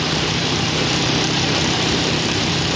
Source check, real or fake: fake